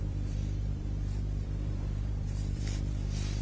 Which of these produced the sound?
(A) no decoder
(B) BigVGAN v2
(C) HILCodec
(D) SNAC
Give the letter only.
B